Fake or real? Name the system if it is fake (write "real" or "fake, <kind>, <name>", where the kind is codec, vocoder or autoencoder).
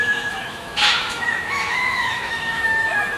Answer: fake, autoencoder, DAC-VAE